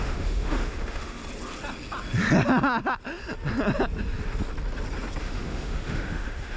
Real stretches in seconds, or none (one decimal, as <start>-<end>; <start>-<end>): 1.2-5.2